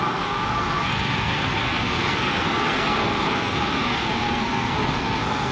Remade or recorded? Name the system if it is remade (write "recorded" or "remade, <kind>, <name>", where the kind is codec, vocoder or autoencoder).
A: remade, codec, SNAC